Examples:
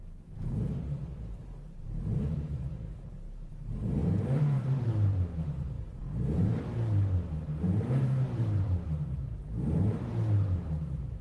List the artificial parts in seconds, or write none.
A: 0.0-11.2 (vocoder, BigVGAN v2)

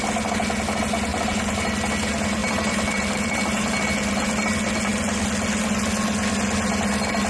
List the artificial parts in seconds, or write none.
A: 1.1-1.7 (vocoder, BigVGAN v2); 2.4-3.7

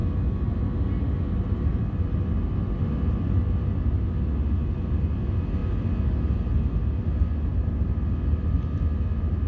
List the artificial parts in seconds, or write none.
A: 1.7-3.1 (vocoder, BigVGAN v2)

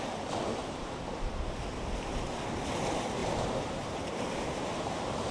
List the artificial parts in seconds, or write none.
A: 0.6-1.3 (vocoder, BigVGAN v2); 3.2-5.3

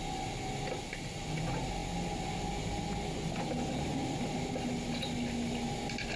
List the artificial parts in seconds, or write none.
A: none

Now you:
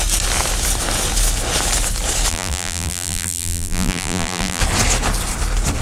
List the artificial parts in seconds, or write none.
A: 2.3-4.6 (vocoder, BigVGAN v2)

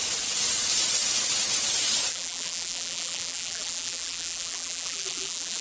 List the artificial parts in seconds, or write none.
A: 2.1-5.6 (vocoder, BigVGAN v2)

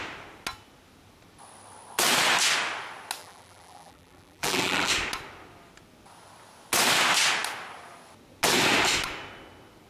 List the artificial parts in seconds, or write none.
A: 3.2-4.9 (vocoder, BigVGAN v2)